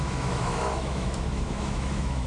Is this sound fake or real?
fake